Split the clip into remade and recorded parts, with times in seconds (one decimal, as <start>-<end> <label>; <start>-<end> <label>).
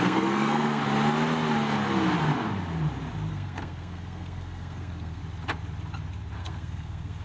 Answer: 0.0-0.8 remade; 0.8-3.3 recorded; 3.3-5.2 remade; 5.2-6.4 recorded; 6.4-7.2 remade